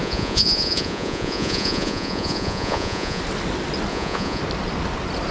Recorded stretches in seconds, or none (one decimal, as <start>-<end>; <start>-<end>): 3.2-3.9; 4.4-5.3